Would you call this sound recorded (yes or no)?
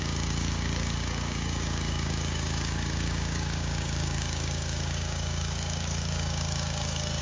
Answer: no